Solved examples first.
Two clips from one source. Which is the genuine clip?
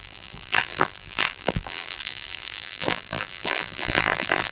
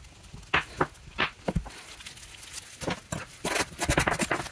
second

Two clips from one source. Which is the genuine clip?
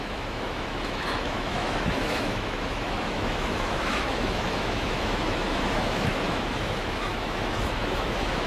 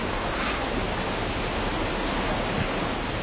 second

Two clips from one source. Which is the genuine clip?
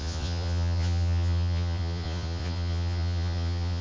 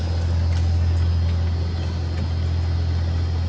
second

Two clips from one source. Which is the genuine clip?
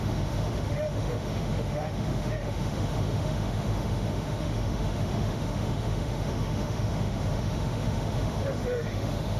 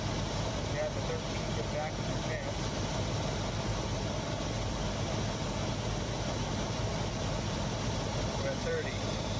second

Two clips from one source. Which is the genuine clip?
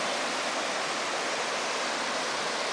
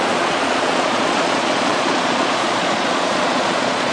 first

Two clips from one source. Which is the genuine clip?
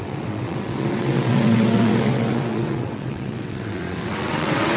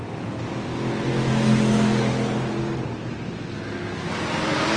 second